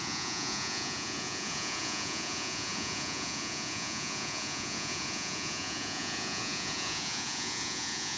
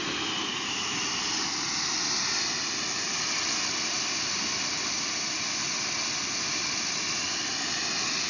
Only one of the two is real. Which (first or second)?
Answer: second